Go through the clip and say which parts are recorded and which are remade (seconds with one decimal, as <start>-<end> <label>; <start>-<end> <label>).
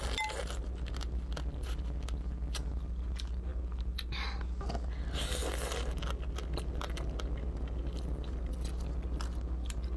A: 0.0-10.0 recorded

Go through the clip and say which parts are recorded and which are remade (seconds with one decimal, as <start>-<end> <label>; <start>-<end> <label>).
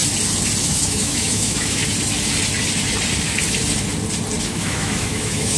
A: 0.0-0.6 recorded; 0.6-1.8 remade; 1.8-4.4 recorded; 4.4-5.6 remade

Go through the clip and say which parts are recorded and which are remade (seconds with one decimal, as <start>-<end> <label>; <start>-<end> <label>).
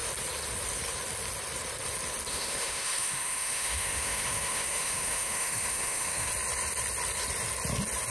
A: 0.0-2.3 recorded; 2.3-6.3 remade; 6.3-8.1 recorded